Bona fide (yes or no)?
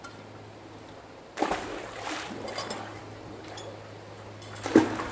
yes